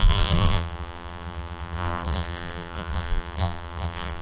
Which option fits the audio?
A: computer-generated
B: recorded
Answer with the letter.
A